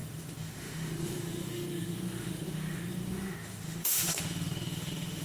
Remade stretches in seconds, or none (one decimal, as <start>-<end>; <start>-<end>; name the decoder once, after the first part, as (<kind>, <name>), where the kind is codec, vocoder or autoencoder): 0.0-5.2 (autoencoder, DAC-VAE)